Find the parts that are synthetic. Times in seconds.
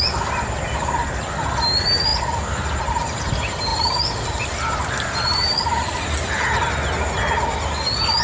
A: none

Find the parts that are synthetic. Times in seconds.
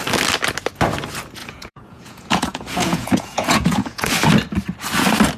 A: 1.4-4.1 (vocoder, Vocos)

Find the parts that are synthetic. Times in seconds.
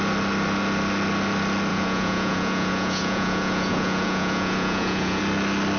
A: 1.7-5.2 (vocoder, Vocos)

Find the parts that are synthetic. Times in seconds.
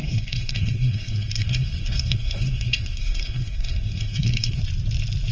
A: 0.0-4.6 (codec, SNAC)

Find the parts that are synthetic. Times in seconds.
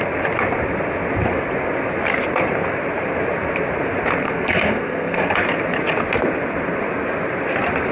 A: 4.2-5.2 (codec, SNAC)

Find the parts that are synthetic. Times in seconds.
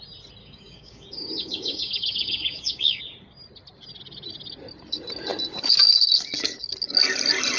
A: 0.4-3.0 (codec, DAC)